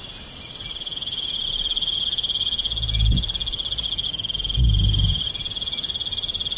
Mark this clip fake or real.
real